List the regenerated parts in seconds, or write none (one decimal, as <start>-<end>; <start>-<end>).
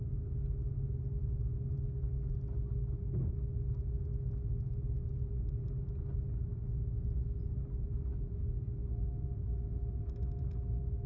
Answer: 4.1-5.1